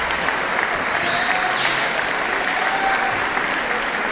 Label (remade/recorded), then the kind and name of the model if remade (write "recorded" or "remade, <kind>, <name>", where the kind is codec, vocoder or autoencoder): recorded